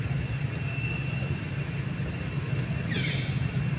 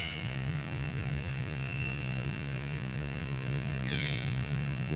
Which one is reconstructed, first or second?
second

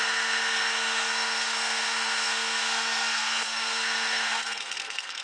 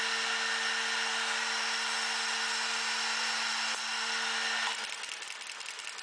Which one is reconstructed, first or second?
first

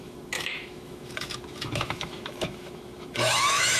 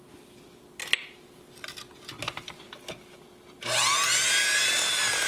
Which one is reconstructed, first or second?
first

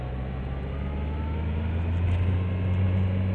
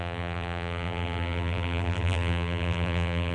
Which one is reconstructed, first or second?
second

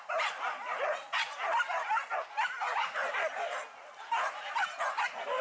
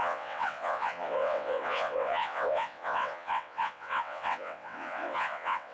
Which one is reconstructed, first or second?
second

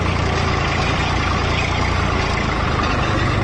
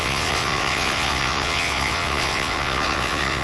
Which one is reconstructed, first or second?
second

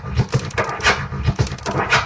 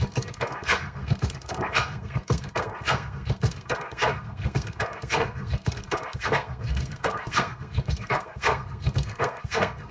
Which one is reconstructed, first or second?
second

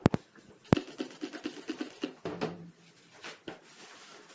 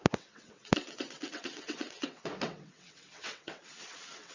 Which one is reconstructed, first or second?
second